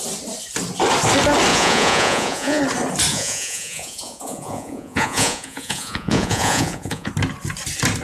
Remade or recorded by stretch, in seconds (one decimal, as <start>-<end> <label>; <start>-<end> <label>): 0.0-1.5 recorded; 1.5-2.6 remade; 2.6-3.1 recorded; 3.1-7.1 remade; 7.1-8.0 recorded